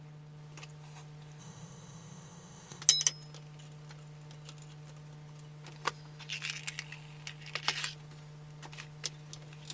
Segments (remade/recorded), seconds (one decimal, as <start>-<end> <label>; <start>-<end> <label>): 0.0-1.4 recorded; 1.4-2.8 remade; 2.8-9.7 recorded